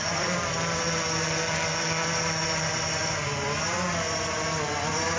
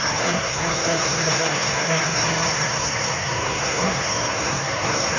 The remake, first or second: second